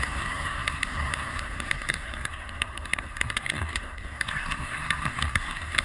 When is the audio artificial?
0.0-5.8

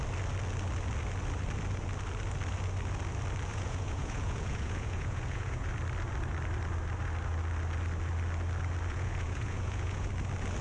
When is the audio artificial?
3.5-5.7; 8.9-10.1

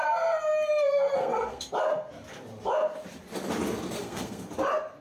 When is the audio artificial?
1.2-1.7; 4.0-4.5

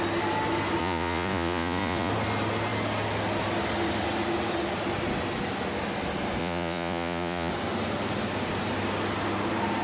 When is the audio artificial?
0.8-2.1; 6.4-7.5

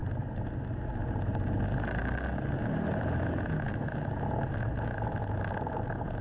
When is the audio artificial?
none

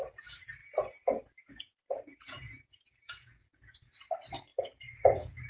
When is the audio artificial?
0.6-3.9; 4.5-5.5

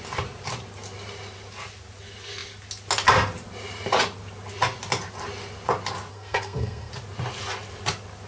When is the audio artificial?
6.1-6.9